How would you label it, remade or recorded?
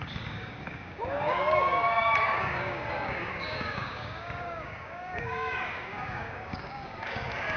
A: remade